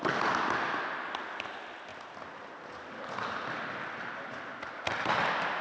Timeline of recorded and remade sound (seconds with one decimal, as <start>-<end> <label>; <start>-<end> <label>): 0.0-5.6 recorded